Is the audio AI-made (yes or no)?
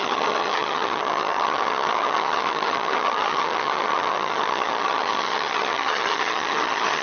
yes